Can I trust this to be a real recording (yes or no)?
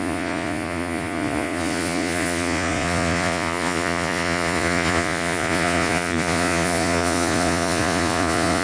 no